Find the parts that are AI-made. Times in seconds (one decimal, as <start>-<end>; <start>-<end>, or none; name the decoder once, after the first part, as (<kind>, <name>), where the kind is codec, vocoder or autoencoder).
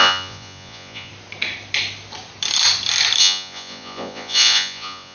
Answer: 0.0-1.1 (vocoder, Vocos); 3.2-5.1